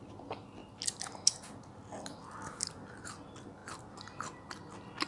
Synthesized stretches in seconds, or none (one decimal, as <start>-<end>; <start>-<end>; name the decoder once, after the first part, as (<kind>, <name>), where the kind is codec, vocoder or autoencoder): none